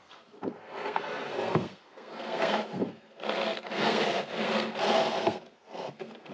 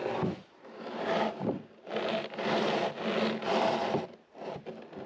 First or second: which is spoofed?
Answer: first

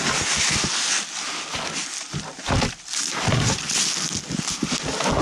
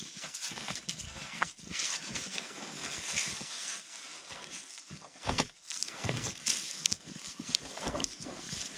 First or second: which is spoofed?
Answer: second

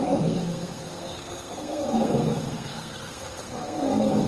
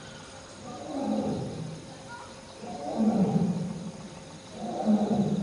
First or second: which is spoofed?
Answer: first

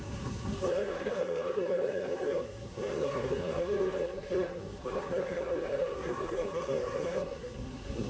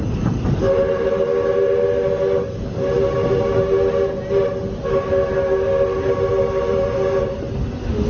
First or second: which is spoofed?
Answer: first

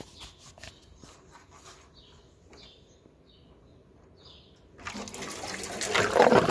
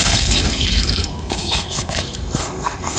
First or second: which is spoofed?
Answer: second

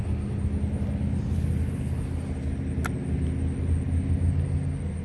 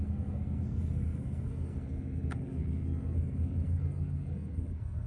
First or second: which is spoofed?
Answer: second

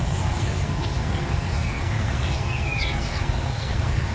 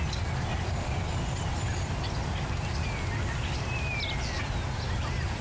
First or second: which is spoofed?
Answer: first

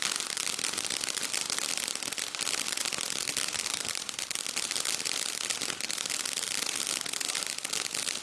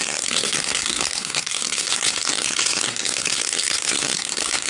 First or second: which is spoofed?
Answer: second